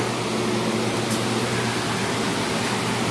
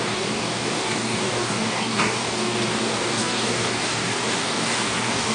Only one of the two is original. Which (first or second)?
first